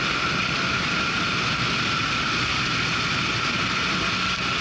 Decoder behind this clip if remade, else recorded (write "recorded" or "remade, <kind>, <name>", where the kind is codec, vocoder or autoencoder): recorded